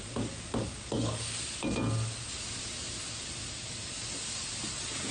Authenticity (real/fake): real